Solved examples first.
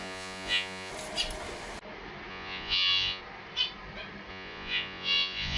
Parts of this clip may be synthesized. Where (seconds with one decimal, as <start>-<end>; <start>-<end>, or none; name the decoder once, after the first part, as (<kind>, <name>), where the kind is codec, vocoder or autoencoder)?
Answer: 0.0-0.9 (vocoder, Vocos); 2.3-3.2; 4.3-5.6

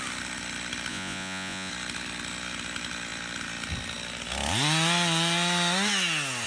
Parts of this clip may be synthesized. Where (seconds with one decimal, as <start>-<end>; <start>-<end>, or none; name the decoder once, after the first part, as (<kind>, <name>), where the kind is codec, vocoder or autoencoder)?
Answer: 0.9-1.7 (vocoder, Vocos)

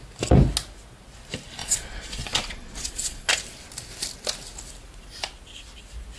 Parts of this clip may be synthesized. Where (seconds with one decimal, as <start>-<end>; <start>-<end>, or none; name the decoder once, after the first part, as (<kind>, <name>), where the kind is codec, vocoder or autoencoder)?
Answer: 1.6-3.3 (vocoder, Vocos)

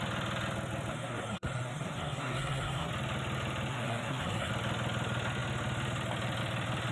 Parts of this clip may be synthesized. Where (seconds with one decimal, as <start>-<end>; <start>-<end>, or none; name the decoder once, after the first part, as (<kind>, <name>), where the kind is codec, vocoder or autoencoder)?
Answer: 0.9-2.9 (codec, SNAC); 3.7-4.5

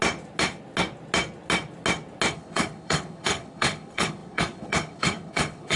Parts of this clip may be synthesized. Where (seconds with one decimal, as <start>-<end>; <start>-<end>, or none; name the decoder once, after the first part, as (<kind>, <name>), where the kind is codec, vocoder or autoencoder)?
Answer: 2.3-5.8 (codec, HILCodec)

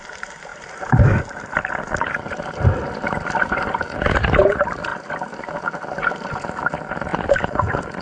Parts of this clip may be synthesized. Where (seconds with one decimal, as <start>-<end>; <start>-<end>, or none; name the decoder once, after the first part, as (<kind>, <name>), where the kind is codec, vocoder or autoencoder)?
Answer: 0.5-1.2 (vocoder, BigVGAN v2); 7.1-8.0